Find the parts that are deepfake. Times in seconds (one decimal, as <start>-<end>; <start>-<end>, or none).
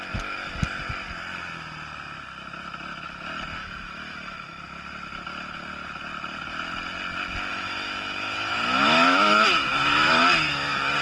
3.6-4.6; 7.5-10.2